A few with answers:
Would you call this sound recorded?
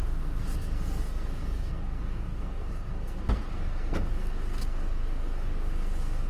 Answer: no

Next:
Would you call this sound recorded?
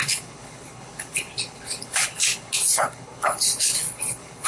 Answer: no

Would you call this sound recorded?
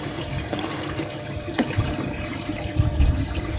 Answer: no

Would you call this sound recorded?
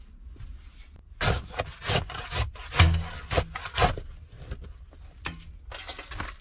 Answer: yes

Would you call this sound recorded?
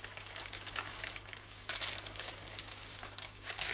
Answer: no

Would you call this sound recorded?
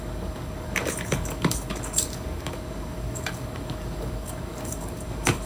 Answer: no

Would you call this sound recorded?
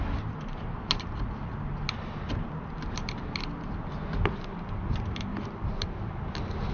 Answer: yes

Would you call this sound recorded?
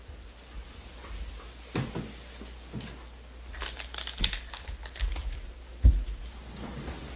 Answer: yes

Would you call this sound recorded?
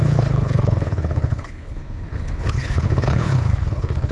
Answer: no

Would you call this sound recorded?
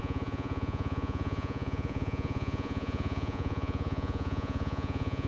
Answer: no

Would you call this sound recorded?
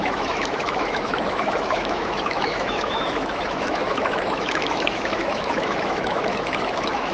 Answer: no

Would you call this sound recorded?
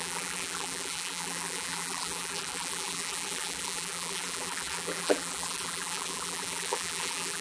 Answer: no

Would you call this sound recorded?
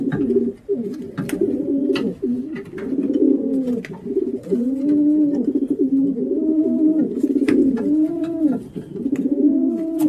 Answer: yes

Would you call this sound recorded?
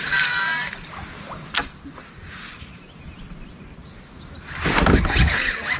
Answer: yes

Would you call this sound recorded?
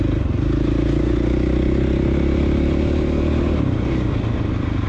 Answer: yes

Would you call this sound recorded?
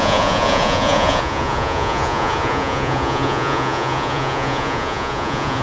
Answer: no